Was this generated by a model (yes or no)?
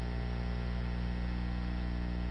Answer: no